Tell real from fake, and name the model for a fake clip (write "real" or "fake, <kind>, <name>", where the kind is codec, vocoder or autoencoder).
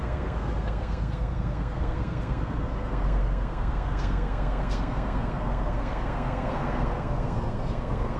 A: fake, codec, SNAC